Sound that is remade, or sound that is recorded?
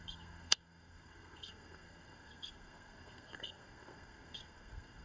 remade